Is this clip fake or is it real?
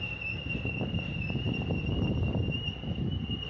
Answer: fake